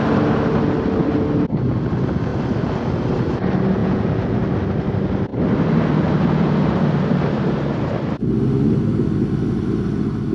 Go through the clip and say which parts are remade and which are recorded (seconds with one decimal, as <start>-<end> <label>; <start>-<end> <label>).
0.0-3.8 recorded; 3.8-4.4 remade; 4.4-10.3 recorded